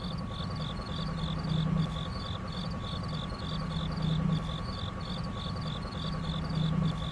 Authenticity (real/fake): real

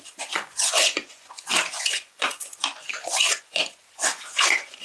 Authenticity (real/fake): fake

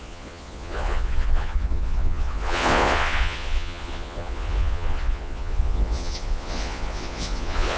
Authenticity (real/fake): fake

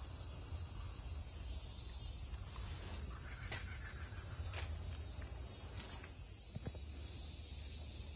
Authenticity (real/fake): real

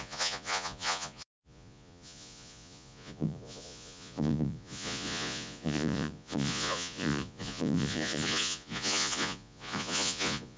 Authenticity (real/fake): fake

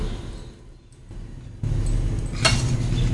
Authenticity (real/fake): real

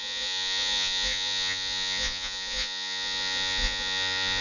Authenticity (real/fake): fake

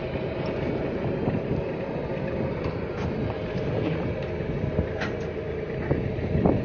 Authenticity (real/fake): real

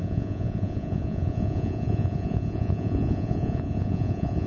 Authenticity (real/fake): fake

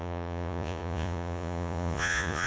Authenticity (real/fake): fake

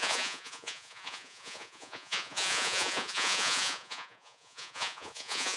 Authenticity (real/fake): fake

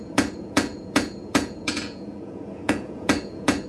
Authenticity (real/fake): fake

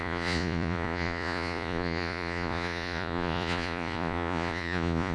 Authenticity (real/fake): fake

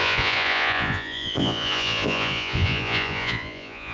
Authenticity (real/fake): fake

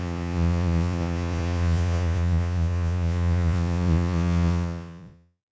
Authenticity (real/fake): fake